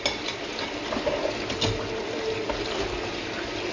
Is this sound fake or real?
real